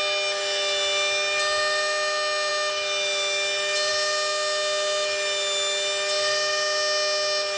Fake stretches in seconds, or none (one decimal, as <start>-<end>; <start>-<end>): none